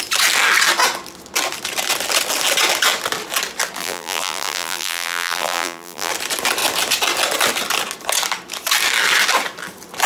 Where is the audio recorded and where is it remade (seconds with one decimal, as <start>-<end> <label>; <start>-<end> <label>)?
0.0-3.8 recorded; 3.8-6.1 remade; 6.1-10.1 recorded